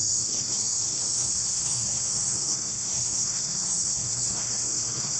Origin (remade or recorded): remade